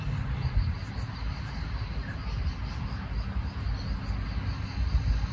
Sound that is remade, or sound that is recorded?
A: recorded